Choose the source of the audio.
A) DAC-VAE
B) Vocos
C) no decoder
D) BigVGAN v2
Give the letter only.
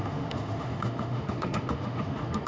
A